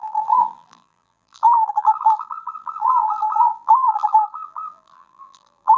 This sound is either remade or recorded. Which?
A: remade